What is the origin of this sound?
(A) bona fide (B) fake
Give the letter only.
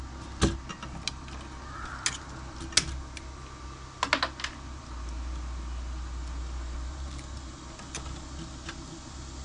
A